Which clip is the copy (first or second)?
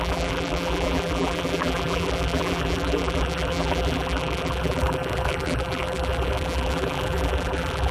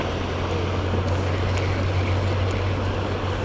first